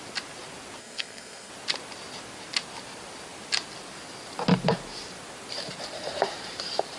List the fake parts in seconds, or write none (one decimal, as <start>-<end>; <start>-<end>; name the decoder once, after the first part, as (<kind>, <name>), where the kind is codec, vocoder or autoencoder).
0.8-1.5 (codec, SNAC)